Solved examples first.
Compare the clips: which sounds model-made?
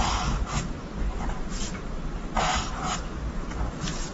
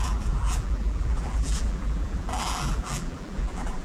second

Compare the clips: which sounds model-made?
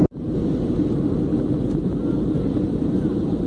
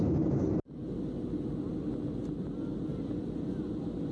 first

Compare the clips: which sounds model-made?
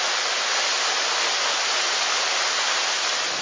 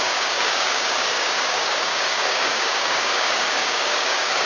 second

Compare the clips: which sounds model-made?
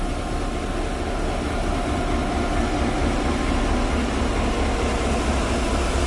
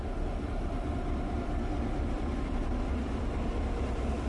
second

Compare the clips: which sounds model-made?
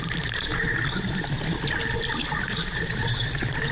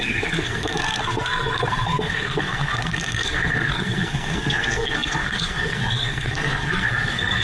second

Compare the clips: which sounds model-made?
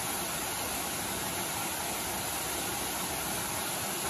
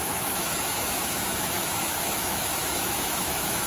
second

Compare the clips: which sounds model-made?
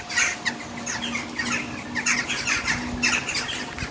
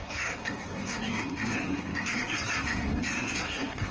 second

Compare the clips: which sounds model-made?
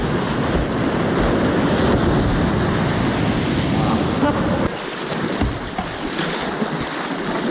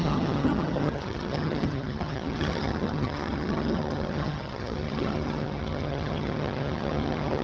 second